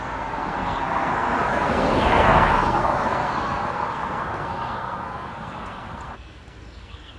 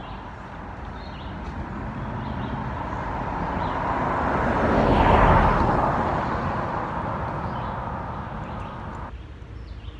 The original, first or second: second